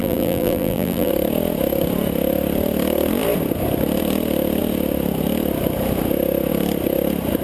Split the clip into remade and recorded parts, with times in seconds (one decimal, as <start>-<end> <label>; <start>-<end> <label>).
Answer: 0.0-1.1 remade; 1.1-7.4 recorded